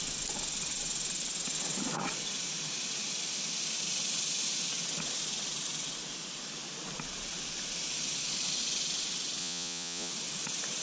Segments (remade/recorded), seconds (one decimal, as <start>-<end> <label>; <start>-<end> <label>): 0.0-9.4 recorded; 9.4-10.1 remade; 10.1-10.8 recorded